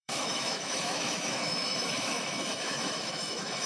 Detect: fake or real fake